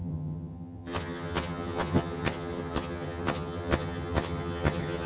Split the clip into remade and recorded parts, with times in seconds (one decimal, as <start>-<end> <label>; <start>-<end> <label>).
0.0-5.1 remade